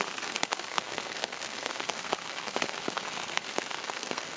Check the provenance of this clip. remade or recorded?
remade